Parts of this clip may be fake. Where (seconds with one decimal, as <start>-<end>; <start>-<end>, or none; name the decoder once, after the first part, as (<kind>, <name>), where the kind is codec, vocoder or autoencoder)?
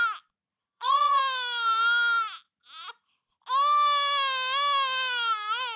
0.6-1.2 (vocoder, Vocos)